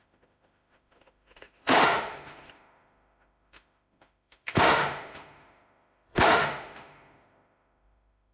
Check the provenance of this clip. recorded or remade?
remade